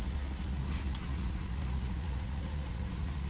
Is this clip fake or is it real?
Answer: fake